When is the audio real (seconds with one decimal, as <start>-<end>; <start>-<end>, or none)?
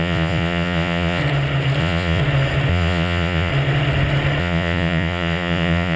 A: 1.2-1.8; 2.2-2.7; 3.5-4.4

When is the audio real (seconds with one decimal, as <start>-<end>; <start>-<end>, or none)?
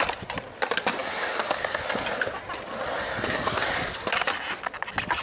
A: 0.0-5.2